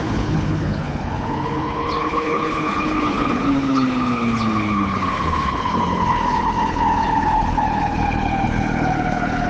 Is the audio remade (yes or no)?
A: yes